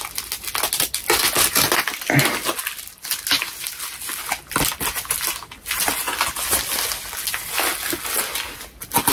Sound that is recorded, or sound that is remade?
recorded